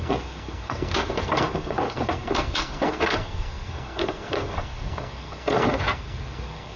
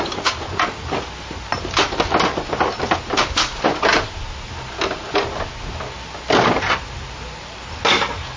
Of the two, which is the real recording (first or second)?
second